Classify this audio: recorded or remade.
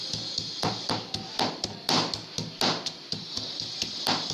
recorded